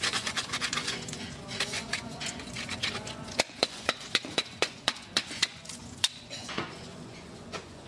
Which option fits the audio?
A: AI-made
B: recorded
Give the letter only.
A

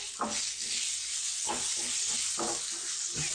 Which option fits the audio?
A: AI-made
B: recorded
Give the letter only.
B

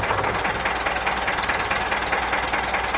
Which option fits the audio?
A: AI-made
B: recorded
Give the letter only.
B